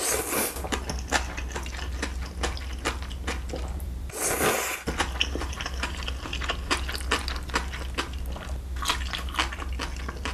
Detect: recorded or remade recorded